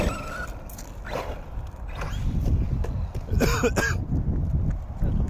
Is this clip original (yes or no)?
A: yes